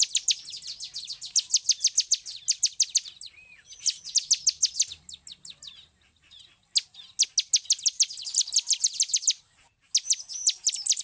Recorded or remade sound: recorded